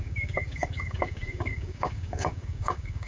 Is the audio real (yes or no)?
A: no